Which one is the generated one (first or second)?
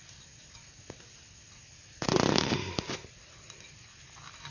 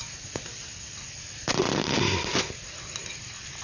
second